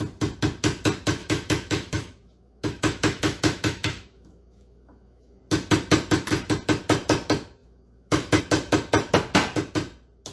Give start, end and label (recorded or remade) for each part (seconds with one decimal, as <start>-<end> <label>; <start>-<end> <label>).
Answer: 0.0-1.2 recorded; 1.2-5.4 remade; 5.4-7.6 recorded; 7.6-8.4 remade; 8.4-10.3 recorded